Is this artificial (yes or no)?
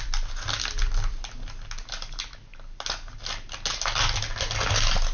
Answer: no